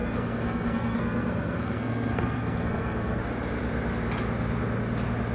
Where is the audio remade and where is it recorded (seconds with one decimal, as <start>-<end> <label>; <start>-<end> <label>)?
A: 0.0-3.2 remade; 3.2-5.3 recorded